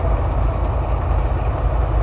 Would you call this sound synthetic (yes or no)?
no